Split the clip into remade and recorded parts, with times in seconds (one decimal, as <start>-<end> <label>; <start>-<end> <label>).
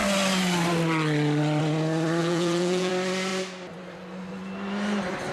0.0-2.2 recorded; 2.2-2.9 remade; 2.9-5.3 recorded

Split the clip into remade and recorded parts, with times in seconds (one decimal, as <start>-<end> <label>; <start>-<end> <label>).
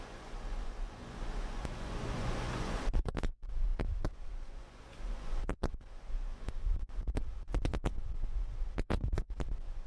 0.0-9.9 remade